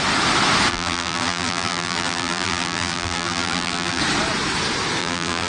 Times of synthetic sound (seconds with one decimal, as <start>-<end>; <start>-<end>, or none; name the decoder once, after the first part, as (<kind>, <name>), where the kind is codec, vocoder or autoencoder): 0.7-4.0 (vocoder, BigVGAN v2); 5.0-5.5